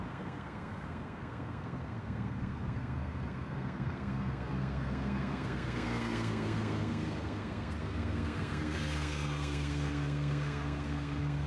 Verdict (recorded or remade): remade